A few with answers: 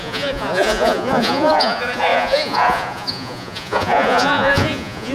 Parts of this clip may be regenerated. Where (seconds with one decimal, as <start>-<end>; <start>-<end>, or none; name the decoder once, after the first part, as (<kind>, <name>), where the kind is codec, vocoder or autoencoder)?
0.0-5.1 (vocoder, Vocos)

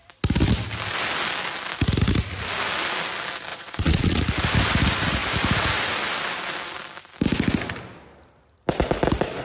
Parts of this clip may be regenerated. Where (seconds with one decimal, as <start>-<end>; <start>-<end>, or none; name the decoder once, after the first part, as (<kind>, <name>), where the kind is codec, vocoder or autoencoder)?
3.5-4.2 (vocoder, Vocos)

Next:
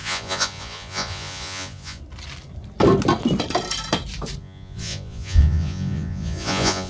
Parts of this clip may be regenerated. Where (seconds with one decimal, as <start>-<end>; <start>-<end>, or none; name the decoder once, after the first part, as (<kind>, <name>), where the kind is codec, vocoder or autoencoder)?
0.0-2.0 (vocoder, Vocos); 4.4-6.9

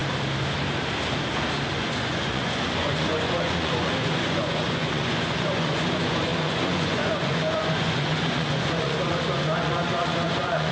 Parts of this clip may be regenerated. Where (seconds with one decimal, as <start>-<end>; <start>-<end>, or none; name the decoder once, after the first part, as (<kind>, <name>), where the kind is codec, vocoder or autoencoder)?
1.8-10.7 (vocoder, Vocos)

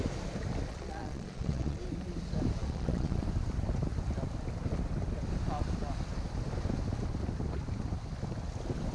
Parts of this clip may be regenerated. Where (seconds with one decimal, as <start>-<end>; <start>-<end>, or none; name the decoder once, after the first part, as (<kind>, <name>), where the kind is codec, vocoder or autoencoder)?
0.7-1.8 (vocoder, Vocos); 2.6-3.2

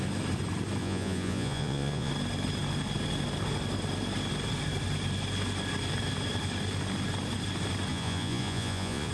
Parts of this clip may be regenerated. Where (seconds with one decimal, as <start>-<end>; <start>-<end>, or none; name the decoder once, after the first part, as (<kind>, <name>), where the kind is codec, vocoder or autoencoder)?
0.8-2.1 (vocoder, Vocos); 7.9-9.1

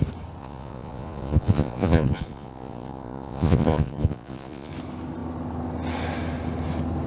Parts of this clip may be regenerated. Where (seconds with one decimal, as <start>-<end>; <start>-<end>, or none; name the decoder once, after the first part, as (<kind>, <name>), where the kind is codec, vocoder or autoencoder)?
0.4-4.7 (vocoder, Vocos)

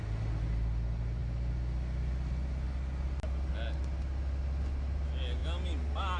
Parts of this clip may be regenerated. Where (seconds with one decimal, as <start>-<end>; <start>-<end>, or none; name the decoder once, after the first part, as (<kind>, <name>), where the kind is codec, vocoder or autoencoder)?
none